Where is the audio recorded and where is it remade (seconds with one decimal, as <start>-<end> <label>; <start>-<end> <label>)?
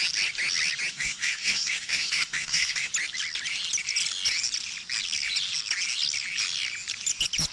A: 0.0-0.9 recorded; 0.9-2.9 remade; 2.9-7.5 recorded